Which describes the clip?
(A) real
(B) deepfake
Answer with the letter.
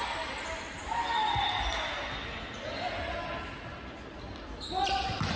A